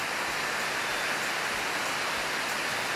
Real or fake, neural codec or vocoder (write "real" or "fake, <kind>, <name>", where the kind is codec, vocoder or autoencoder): real